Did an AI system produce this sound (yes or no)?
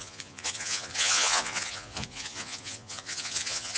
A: yes